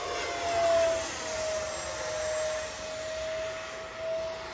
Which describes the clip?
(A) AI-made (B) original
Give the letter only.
B